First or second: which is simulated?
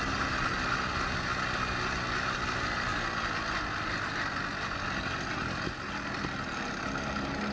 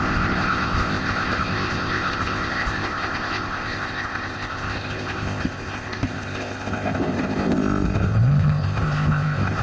second